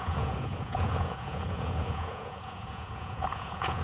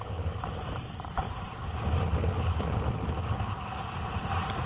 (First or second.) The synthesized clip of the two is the first